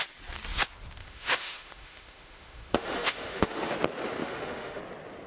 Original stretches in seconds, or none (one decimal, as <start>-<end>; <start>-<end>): 0.0-1.0; 3.7-4.2; 4.8-5.3

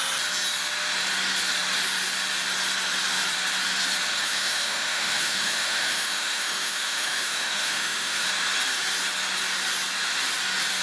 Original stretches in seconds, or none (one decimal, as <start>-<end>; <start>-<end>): 0.0-4.1; 8.3-10.8